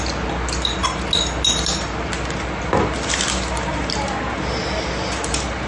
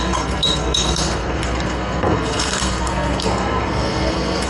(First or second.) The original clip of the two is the first